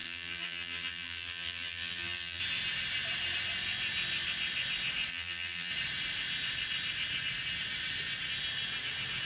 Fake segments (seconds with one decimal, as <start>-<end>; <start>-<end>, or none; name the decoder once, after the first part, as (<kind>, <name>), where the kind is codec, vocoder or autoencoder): 0.0-2.4 (vocoder, BigVGAN v2); 5.1-5.7